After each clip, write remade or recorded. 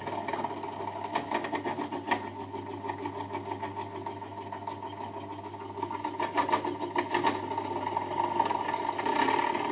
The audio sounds recorded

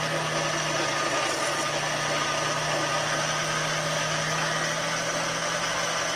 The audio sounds recorded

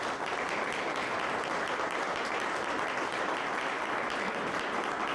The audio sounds recorded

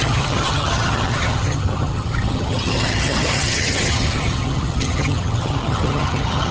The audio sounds remade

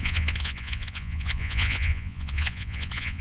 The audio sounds remade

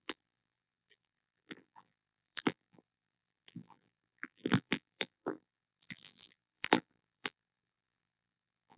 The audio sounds remade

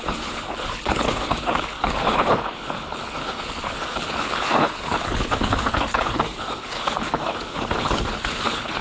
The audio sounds remade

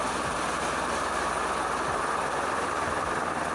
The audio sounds recorded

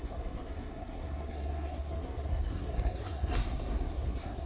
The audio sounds remade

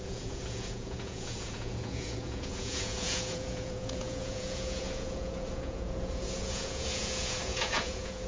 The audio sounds remade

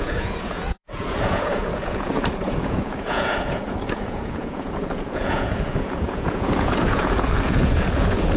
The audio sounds remade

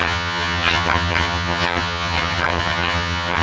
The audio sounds remade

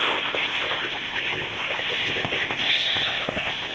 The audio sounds remade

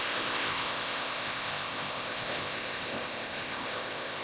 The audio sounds remade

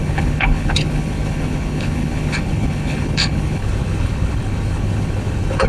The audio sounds remade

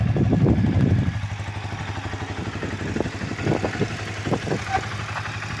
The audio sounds recorded